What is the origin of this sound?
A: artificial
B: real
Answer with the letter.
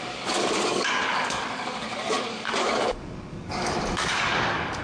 A